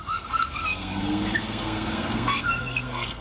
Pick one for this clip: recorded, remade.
remade